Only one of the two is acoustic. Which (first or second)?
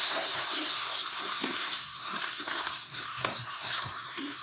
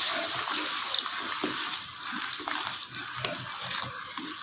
second